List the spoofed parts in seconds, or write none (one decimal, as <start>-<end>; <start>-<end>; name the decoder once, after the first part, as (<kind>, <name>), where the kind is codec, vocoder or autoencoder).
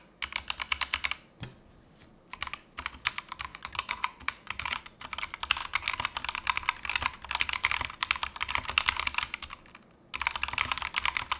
3.5-4.8 (vocoder, Vocos)